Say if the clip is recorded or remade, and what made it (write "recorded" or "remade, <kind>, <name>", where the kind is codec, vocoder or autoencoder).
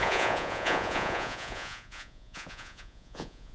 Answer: remade, vocoder, Vocos